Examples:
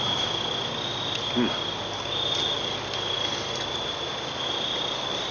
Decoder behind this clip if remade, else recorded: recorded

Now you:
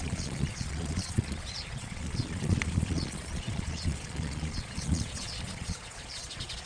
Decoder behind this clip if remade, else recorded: remade, vocoder, Vocos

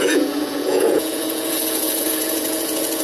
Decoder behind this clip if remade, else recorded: remade, vocoder, Vocos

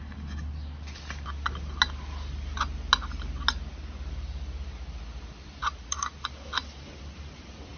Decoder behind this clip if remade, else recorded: recorded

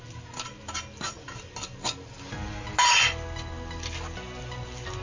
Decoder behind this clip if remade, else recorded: recorded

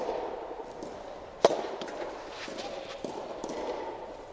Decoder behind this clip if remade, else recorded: remade, vocoder, BigVGAN v2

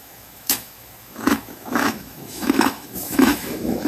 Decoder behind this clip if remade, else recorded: remade, autoencoder, DAC-VAE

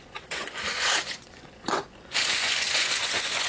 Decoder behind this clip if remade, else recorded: remade, vocoder, Vocos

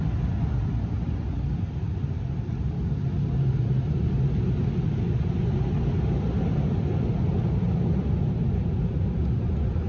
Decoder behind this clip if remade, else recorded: recorded